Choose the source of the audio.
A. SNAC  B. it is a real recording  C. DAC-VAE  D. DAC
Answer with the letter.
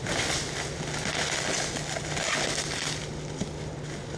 B